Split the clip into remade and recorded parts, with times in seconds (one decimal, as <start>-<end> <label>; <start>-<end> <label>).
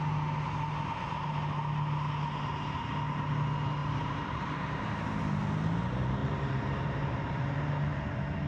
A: 0.0-3.8 recorded; 3.8-5.2 remade; 5.2-6.2 recorded; 6.2-8.1 remade; 8.1-8.5 recorded